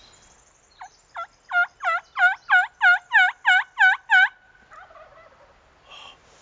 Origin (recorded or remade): recorded